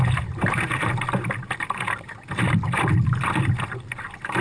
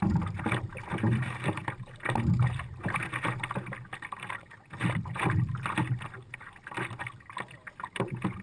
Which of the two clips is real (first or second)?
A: second